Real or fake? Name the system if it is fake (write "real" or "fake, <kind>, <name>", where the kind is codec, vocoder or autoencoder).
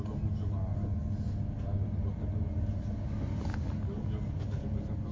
real